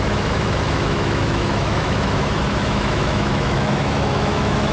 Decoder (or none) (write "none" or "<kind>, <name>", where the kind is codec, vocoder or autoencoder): autoencoder, DAC-VAE